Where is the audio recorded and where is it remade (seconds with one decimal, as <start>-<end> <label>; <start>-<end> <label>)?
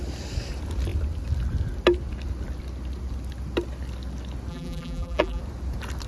0.0-4.5 recorded; 4.5-5.4 remade; 5.4-6.1 recorded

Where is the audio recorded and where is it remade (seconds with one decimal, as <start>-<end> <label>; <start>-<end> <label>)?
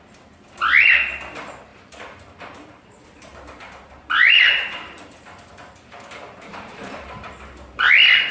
0.0-1.7 recorded; 1.7-5.4 remade; 5.4-6.5 recorded; 6.5-7.9 remade; 7.9-8.3 recorded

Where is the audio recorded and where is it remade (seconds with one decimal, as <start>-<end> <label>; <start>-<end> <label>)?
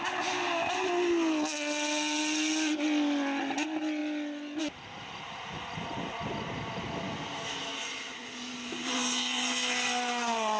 0.0-10.6 recorded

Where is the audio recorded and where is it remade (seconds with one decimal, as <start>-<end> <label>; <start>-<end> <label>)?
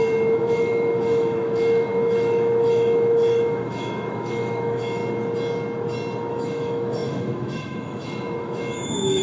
0.0-5.0 remade; 5.0-6.3 recorded; 6.3-9.2 remade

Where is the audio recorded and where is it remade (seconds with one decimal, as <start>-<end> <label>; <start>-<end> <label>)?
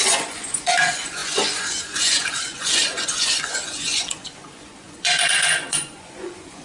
0.0-6.6 remade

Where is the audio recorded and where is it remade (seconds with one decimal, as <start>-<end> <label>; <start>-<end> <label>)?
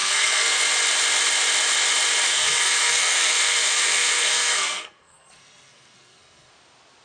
0.0-0.6 remade; 0.6-2.3 recorded; 2.3-6.5 remade; 6.5-7.0 recorded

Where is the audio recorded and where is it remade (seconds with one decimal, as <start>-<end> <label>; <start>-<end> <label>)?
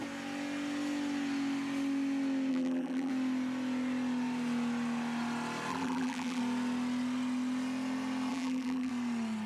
0.0-2.5 recorded; 2.5-3.1 remade; 3.1-5.7 recorded; 5.7-6.4 remade; 6.4-8.3 recorded; 8.3-8.9 remade; 8.9-9.5 recorded